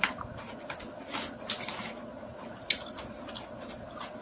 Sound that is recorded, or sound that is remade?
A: recorded